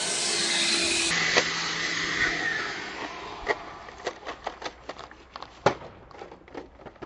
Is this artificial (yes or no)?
no